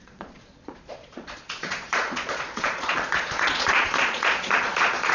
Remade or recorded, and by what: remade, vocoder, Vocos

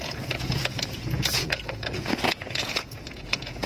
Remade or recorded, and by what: remade, vocoder, Vocos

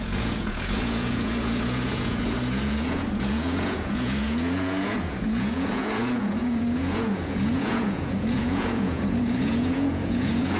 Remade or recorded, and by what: remade, vocoder, Vocos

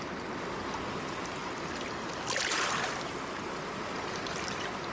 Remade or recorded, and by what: recorded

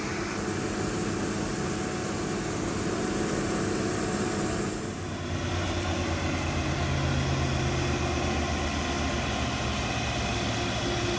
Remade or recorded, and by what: recorded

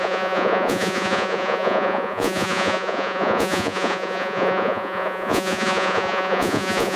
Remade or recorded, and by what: remade, vocoder, Vocos